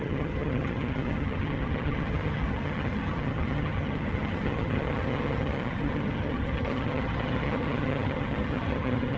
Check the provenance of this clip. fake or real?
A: fake